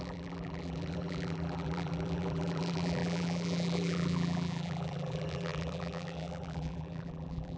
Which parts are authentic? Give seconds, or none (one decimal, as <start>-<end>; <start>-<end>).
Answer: none